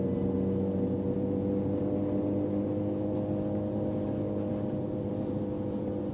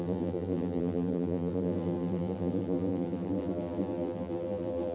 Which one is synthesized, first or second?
second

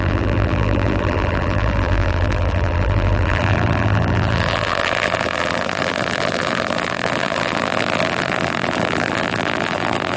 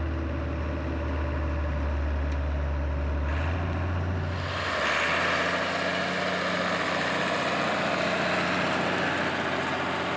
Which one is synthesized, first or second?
first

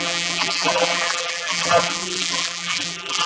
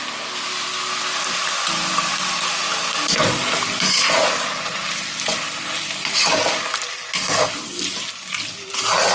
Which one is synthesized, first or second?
first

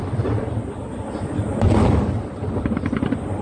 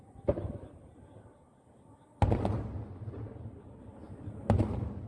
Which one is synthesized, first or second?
first